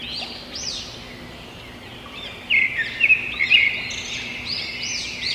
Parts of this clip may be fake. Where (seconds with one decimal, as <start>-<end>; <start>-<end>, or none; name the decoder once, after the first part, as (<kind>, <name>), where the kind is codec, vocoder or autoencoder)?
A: 1.9-2.7 (vocoder, BigVGAN v2)